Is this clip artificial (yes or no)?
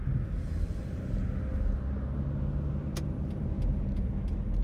no